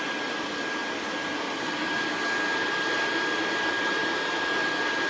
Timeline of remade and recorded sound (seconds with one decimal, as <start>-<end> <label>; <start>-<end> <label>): 0.0-5.1 recorded

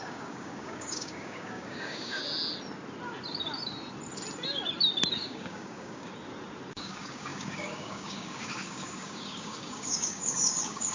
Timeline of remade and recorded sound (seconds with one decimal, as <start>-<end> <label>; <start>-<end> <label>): 0.0-2.2 remade; 2.2-5.1 recorded; 5.1-6.1 remade; 6.1-6.7 recorded; 6.7-10.9 remade

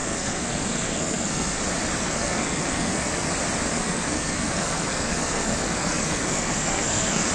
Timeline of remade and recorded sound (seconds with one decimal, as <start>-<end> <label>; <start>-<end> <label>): 0.0-1.6 remade; 1.6-2.0 recorded; 2.0-3.3 remade; 3.3-3.7 recorded; 3.7-7.3 remade

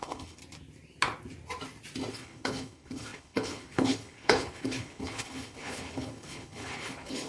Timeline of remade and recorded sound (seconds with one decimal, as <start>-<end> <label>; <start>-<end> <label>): 0.0-0.4 remade; 0.4-2.1 recorded; 2.1-7.3 remade

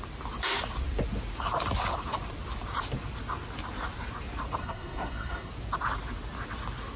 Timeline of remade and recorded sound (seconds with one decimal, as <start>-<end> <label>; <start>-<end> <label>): 0.0-4.6 recorded; 4.6-5.5 remade; 5.5-7.0 recorded

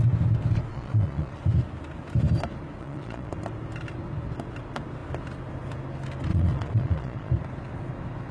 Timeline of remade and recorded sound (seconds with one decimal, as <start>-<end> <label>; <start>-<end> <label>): 0.0-0.7 recorded; 0.7-1.4 remade; 1.4-2.8 recorded; 2.8-3.3 remade; 3.3-6.3 recorded; 6.3-7.3 remade; 7.3-8.3 recorded